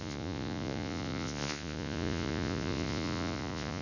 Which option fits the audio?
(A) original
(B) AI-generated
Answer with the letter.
B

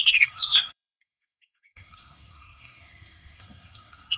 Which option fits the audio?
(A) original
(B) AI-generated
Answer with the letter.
B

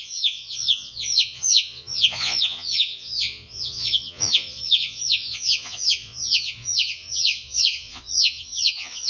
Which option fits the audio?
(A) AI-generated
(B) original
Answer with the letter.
A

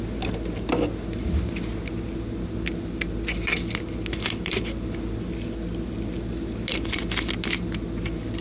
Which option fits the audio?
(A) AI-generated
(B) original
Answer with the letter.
B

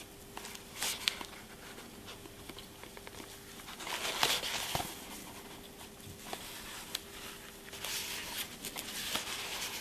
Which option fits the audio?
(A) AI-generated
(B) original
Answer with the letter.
B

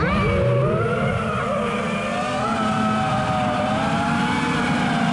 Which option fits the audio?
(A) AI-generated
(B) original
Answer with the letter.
B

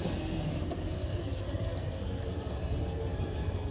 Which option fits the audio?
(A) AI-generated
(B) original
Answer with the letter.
A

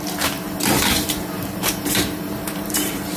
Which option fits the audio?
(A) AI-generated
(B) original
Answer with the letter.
A